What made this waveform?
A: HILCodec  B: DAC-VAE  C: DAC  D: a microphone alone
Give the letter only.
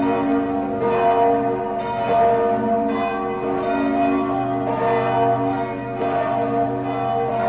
D